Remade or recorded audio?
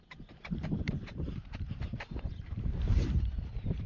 remade